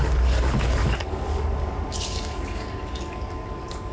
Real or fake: fake